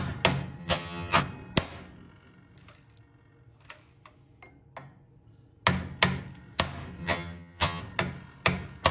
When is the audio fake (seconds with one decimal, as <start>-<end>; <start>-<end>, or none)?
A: 0.6-1.2; 7.0-7.8